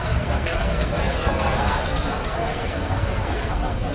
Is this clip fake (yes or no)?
yes